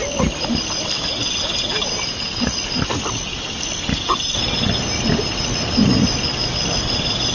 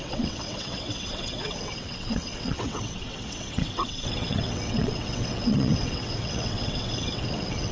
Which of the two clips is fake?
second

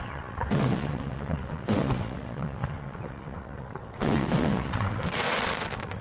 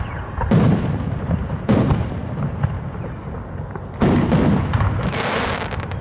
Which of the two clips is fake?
first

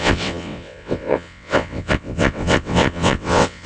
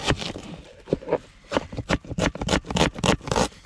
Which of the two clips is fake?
first